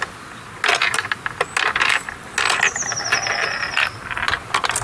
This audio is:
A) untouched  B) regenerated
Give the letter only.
A